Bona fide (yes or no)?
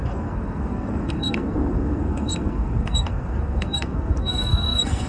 no